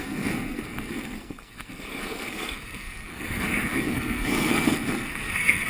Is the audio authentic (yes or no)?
no